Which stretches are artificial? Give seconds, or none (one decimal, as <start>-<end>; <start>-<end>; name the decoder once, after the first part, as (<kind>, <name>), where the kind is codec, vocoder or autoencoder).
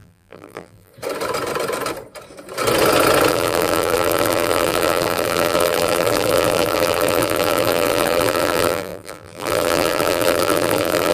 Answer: 0.0-0.9 (vocoder, BigVGAN v2); 3.3-11.1